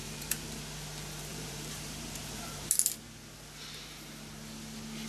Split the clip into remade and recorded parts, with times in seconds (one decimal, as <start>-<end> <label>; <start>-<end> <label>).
0.0-0.6 remade; 0.6-1.3 recorded; 1.3-2.7 remade; 2.7-5.1 recorded